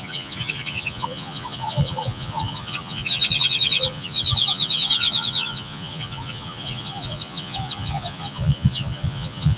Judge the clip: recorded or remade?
remade